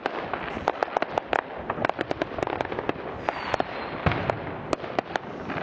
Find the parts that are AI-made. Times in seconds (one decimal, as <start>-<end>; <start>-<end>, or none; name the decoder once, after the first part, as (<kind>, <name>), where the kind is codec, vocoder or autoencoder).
none